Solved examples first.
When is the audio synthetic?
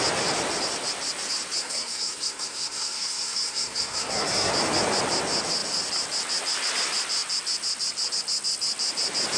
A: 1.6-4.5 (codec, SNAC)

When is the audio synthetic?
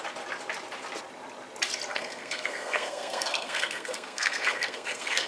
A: 1.9-5.3 (codec, SNAC)